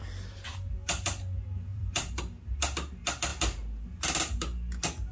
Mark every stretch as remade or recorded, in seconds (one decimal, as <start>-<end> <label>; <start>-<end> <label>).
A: 0.0-0.5 recorded; 0.5-1.2 remade; 1.2-1.7 recorded; 1.7-2.2 remade; 2.2-5.1 recorded